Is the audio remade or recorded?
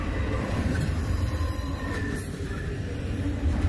remade